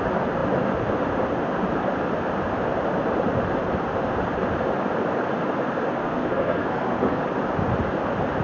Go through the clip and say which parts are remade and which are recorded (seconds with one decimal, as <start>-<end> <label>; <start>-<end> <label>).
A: 0.0-6.0 recorded; 6.0-7.2 remade; 7.2-8.4 recorded